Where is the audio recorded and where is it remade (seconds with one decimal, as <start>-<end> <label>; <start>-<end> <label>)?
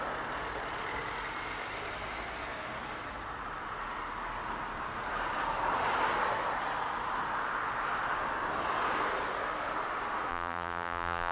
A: 0.0-10.3 recorded; 10.3-11.3 remade